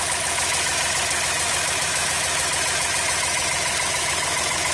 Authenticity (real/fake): fake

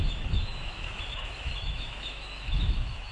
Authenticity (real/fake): fake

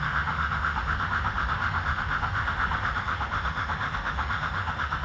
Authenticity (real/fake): fake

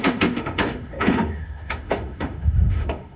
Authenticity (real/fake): fake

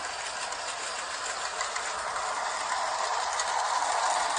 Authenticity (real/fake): real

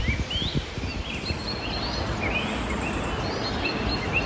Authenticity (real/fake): real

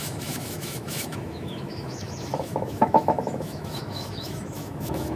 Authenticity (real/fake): fake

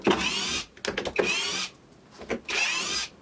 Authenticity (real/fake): real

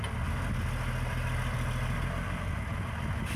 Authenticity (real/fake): real